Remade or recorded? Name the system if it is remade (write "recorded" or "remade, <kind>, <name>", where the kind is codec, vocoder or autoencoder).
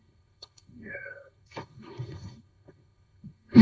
remade, codec, SNAC